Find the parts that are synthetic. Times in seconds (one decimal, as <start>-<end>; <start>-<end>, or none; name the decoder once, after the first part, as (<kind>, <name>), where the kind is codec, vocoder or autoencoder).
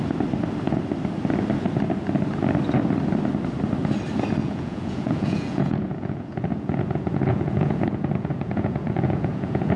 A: 4.4-9.8 (vocoder, Vocos)